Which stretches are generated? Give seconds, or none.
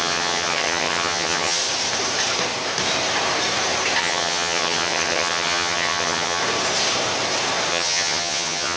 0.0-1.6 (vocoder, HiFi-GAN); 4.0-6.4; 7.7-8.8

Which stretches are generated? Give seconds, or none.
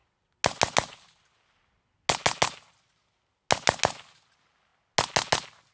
none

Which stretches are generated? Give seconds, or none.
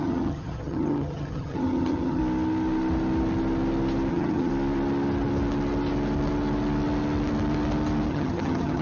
0.0-2.2 (vocoder, HiFi-GAN); 4.1-4.5; 8.1-8.8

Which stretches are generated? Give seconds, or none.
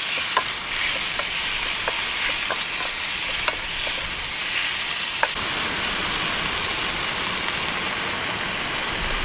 none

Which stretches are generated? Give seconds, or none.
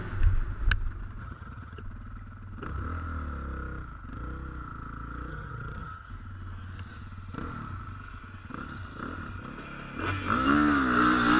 1.2-1.8 (vocoder, HiFi-GAN); 5.3-6.1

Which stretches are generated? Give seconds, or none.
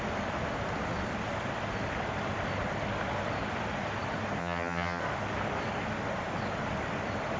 4.4-5.0 (vocoder, HiFi-GAN)